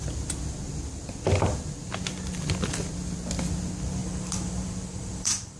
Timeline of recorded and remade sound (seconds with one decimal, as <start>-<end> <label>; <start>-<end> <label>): 0.0-4.0 recorded; 4.0-5.6 remade